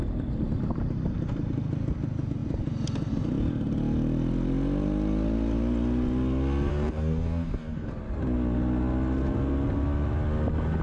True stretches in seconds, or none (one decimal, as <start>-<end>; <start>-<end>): 0.0-6.7; 7.9-10.8